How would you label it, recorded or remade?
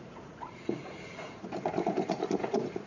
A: remade